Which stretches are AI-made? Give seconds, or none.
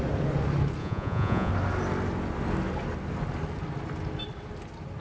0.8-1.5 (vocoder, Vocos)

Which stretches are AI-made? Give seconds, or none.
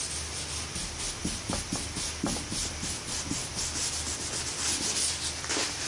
none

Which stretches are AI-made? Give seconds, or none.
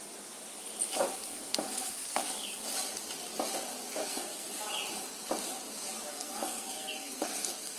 1.3-2.3 (codec, SNAC); 4.0-4.6; 6.1-7.8